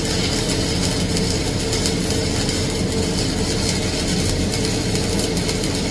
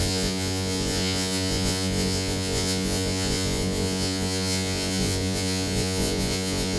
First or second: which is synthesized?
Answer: second